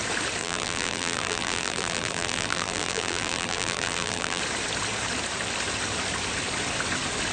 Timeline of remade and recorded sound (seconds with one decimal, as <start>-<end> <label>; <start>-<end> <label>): 0.0-0.4 recorded; 0.4-4.4 remade; 4.4-7.3 recorded